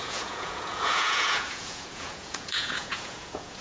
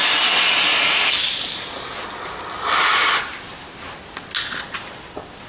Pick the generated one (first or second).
first